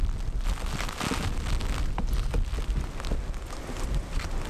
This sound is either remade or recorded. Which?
recorded